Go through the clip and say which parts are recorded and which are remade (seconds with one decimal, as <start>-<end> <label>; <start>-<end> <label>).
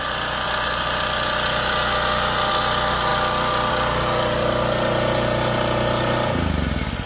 0.0-7.1 recorded